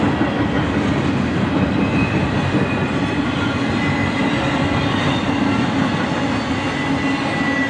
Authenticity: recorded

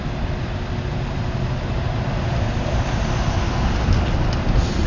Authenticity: recorded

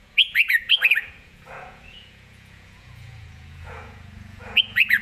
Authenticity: remade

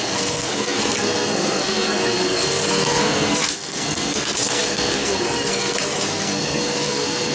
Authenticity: remade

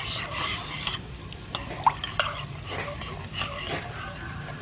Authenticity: recorded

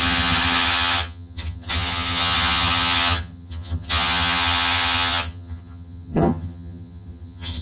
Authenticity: remade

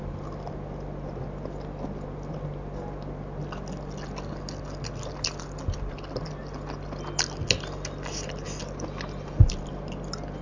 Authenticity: recorded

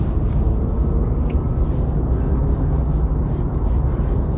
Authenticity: recorded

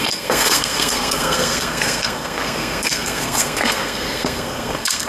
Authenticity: remade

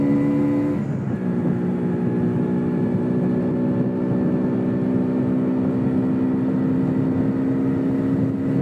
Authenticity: recorded